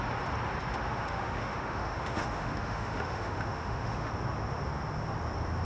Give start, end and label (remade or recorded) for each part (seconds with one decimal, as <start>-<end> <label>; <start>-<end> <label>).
0.0-0.7 recorded; 0.7-4.1 remade; 4.1-5.6 recorded